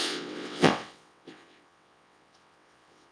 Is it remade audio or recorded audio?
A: remade